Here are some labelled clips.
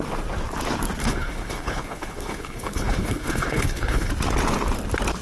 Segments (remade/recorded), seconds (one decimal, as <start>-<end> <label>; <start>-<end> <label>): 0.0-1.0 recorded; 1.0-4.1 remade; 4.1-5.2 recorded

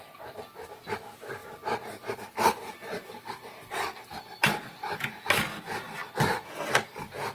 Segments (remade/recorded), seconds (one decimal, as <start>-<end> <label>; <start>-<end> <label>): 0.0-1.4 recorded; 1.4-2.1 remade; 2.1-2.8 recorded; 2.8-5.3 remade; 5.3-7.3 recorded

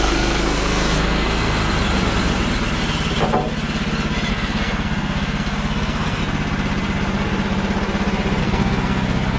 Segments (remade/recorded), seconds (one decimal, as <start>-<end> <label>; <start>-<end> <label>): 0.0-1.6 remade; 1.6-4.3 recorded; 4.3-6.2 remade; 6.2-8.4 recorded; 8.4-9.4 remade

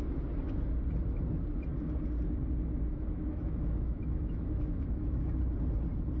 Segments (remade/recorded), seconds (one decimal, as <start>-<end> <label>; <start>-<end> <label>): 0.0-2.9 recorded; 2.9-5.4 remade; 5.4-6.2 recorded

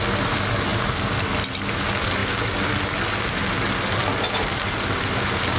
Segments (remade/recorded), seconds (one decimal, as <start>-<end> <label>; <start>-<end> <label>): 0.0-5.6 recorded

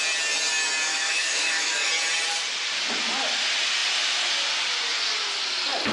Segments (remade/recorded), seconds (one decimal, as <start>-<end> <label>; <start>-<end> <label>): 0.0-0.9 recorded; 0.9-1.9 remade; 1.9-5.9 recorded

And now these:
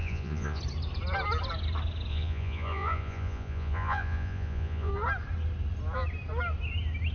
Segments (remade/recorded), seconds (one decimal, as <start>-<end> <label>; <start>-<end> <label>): 0.0-0.6 remade; 0.6-2.1 recorded; 2.1-4.9 remade; 4.9-7.1 recorded